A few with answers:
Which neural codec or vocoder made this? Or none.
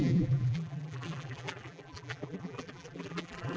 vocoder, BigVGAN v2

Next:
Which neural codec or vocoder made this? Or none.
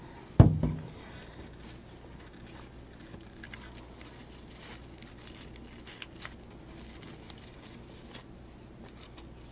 none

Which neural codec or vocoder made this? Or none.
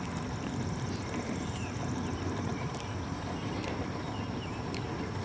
vocoder, BigVGAN v2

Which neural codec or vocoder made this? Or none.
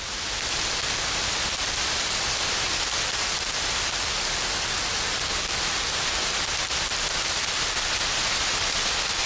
none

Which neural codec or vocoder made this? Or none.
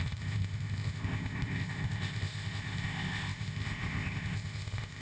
codec, ZipCodec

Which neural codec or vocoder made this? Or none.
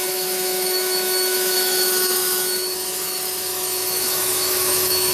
autoencoder, DAC-VAE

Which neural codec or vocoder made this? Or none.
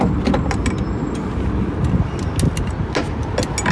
none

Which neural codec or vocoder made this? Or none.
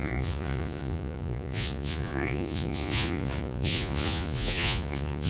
vocoder, Vocos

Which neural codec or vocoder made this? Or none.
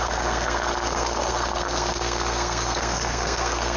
codec, SNAC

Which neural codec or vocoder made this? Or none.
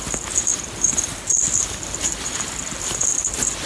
none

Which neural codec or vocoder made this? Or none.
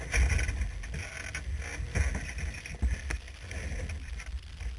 none